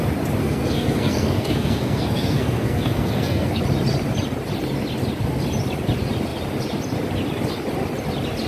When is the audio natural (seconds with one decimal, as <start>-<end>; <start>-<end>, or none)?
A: 0.0-0.4; 3.6-8.5